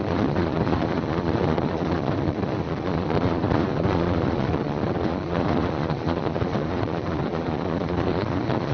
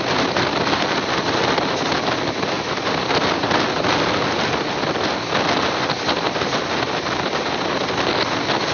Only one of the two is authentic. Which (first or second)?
second